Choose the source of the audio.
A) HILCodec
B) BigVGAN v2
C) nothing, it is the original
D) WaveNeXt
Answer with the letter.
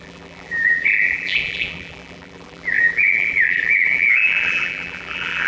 B